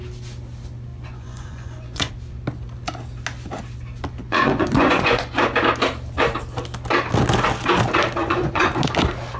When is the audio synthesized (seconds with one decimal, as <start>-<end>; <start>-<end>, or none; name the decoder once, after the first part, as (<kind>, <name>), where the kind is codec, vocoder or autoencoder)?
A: 0.9-2.1 (vocoder, Vocos); 4.2-5.4; 8.2-8.8